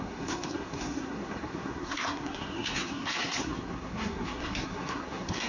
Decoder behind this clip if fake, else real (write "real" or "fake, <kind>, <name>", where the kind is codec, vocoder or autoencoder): fake, codec, SNAC